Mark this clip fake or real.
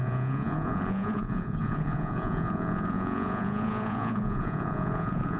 fake